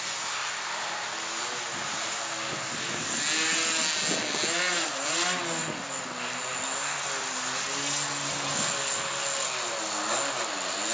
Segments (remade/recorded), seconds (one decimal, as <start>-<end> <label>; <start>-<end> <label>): 0.0-10.9 recorded